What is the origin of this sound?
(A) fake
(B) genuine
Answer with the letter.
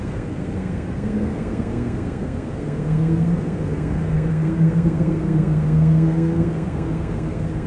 A